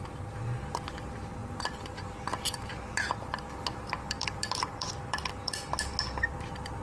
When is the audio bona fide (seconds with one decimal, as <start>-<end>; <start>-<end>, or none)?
0.0-1.4; 5.5-6.8